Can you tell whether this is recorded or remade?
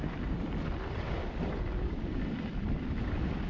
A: recorded